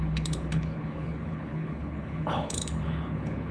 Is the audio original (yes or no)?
no